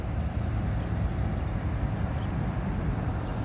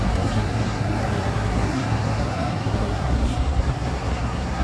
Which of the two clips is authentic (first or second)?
first